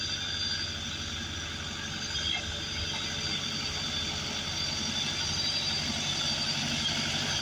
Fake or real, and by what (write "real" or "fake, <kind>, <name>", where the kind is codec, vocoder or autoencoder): real